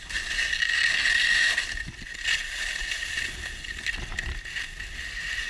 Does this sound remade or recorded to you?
recorded